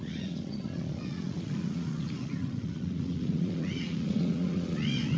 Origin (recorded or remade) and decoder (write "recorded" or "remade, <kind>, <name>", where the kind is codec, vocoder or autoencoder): remade, vocoder, Vocos